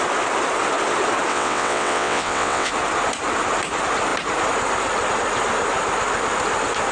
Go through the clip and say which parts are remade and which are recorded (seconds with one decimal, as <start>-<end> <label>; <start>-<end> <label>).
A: 0.0-1.3 recorded; 1.3-2.7 remade; 2.7-6.9 recorded